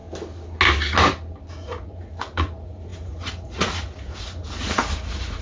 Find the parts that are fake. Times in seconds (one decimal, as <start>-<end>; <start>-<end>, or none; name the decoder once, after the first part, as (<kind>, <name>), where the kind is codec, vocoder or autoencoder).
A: 1.5-5.4 (vocoder, Vocos)